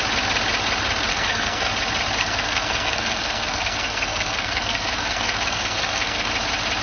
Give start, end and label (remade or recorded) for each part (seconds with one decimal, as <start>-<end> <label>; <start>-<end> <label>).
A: 0.0-1.1 recorded; 1.1-1.7 remade; 1.7-2.2 recorded; 2.2-6.3 remade; 6.3-6.8 recorded